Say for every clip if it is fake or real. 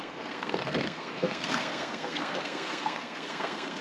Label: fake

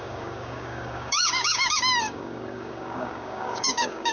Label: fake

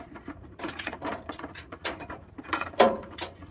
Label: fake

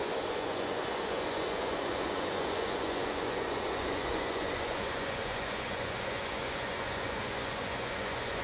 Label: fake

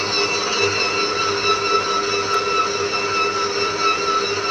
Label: real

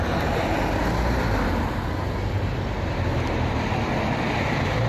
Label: real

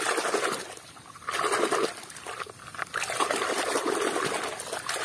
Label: real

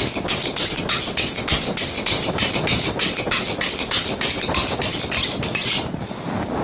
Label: real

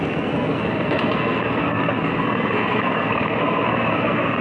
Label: fake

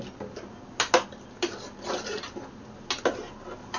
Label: real